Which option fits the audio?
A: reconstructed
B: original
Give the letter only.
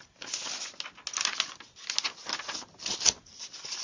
B